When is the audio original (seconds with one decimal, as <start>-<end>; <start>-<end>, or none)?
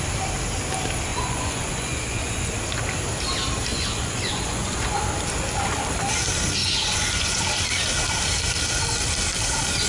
0.0-1.1; 2.5-3.7; 5.0-6.6; 7.4-9.9